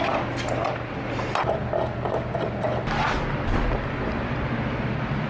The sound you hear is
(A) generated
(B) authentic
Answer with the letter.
B